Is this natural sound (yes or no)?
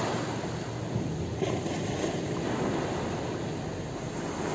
yes